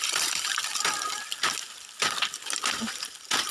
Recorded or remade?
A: recorded